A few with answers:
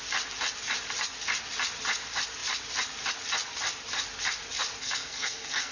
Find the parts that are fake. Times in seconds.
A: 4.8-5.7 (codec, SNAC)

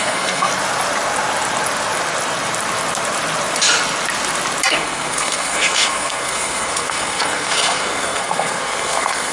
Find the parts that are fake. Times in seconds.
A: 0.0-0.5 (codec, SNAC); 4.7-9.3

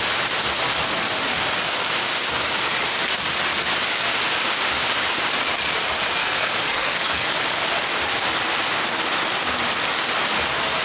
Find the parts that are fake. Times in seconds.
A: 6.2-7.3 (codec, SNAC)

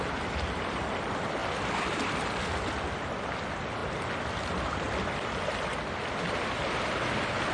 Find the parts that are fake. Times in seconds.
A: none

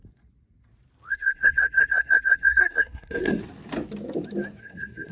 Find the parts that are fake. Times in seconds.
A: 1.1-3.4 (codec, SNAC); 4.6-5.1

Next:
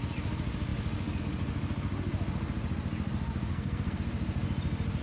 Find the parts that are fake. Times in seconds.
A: 3.5-4.0 (codec, SNAC)

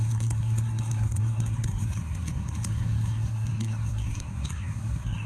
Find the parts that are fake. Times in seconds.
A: 0.0-5.3 (codec, SNAC)